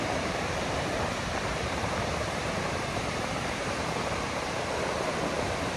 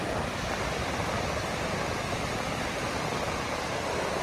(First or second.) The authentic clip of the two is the second